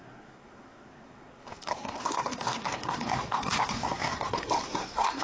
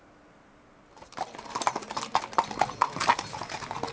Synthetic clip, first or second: first